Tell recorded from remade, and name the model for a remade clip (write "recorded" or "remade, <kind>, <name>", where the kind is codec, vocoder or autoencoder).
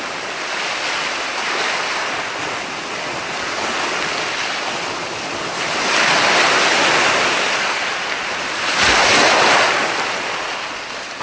recorded